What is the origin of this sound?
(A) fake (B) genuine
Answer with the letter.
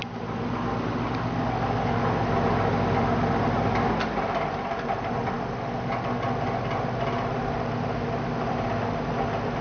B